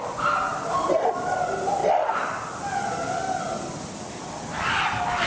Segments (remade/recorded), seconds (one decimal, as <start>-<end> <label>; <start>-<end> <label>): 0.0-5.3 recorded

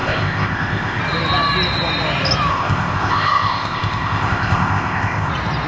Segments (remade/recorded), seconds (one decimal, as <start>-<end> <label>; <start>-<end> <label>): 0.0-1.0 remade; 1.0-2.5 recorded; 2.5-5.3 remade; 5.3-5.7 recorded

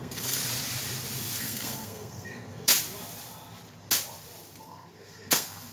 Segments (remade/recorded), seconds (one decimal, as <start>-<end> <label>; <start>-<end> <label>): 0.0-0.4 remade; 0.4-1.4 recorded; 1.4-2.7 remade; 2.7-4.6 recorded; 4.6-5.7 remade

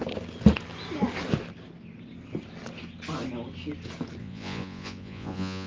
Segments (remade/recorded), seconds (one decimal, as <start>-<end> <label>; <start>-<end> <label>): 0.0-4.2 recorded; 4.2-5.7 remade